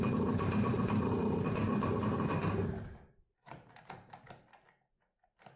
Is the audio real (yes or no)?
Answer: no